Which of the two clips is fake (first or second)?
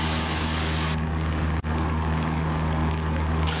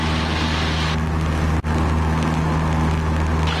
first